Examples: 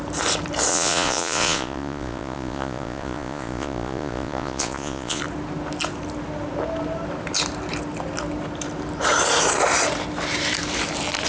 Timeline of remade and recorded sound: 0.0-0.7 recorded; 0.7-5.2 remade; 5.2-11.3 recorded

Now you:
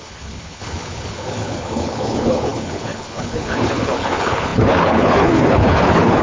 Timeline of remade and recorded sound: 0.0-6.2 remade

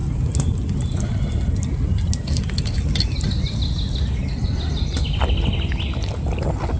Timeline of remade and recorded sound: 0.0-6.8 recorded

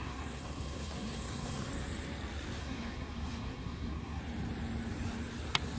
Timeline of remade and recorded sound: 0.0-1.7 remade; 1.7-2.6 recorded; 2.6-4.2 remade; 4.2-5.8 recorded